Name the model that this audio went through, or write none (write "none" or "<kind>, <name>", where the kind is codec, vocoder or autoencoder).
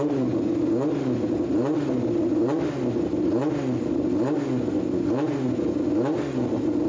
none